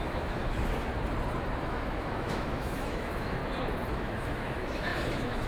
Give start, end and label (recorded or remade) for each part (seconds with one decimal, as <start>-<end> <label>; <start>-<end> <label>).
0.0-0.9 remade; 0.9-1.6 recorded; 1.6-3.4 remade; 3.4-3.9 recorded; 3.9-5.5 remade